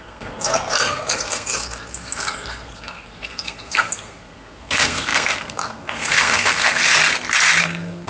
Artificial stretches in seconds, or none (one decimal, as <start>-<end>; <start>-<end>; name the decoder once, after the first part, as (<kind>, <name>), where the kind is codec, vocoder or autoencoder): 0.0-6.8 (codec, SNAC); 7.6-8.1